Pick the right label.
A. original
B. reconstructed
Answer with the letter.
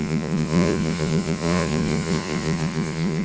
B